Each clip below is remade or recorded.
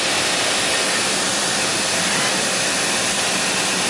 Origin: recorded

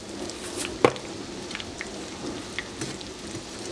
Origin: recorded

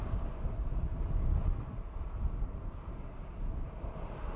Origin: recorded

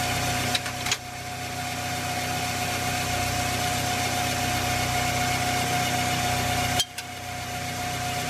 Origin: recorded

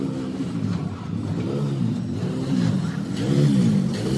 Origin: recorded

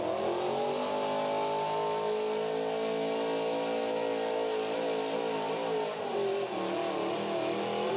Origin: recorded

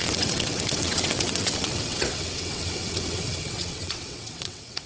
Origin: remade